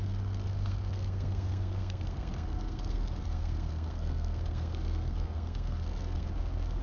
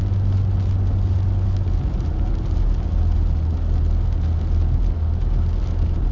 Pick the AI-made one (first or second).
first